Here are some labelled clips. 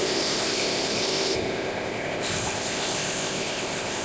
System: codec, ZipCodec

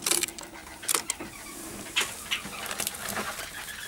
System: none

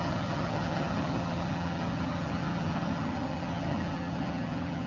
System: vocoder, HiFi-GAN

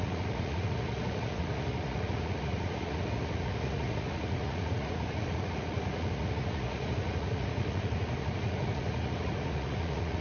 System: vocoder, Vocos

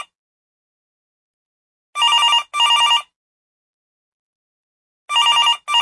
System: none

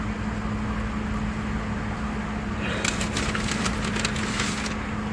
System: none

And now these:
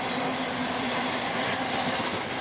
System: none